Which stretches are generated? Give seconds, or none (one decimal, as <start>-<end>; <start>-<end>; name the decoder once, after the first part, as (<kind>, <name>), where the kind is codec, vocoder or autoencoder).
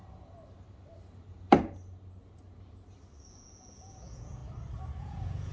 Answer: 3.3-4.4 (vocoder, Vocos); 5.0-5.5